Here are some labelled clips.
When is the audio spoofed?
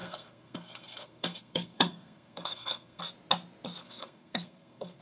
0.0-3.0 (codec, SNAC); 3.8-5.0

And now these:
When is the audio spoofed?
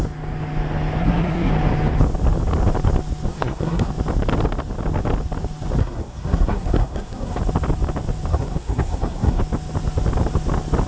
1.0-1.5 (codec, SNAC); 3.3-3.9; 5.8-7.4; 8.3-9.4